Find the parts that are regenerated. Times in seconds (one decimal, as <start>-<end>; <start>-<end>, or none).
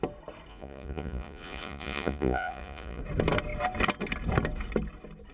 0.5-3.0